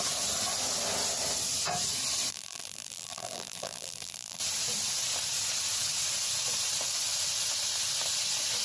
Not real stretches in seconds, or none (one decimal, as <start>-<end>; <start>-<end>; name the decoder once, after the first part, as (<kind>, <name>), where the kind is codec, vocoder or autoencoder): 2.3-4.4 (vocoder, BigVGAN v2)